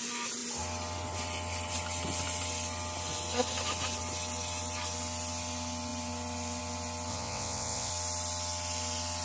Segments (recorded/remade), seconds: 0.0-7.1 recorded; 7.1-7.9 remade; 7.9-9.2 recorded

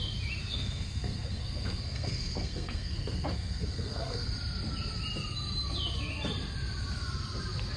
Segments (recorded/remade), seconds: 0.0-0.4 recorded; 0.4-4.3 remade; 4.3-7.8 recorded

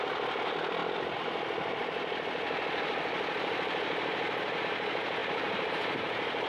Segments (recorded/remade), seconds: 0.0-5.2 recorded; 5.2-5.7 remade; 5.7-6.5 recorded

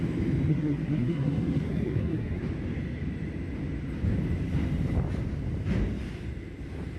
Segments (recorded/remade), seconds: 0.0-0.5 recorded; 0.5-2.4 remade; 2.4-7.0 recorded

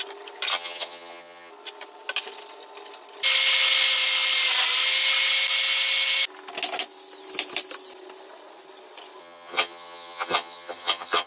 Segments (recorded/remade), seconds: 0.0-0.5 recorded; 0.5-1.5 remade; 1.5-9.2 recorded; 9.2-11.3 remade

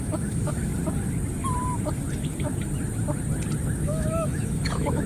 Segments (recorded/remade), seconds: 0.0-0.7 remade; 0.7-3.8 recorded; 3.8-5.1 remade

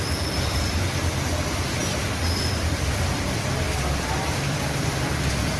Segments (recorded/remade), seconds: 0.0-5.6 remade